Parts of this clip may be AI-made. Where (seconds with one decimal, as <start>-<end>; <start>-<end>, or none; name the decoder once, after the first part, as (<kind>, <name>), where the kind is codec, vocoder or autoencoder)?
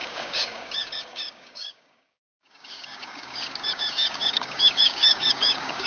0.0-5.9 (codec, DAC)